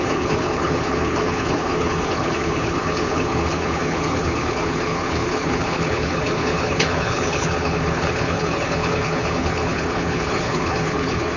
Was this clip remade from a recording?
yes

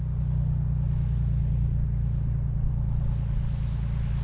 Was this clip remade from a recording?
no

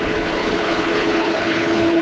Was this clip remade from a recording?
yes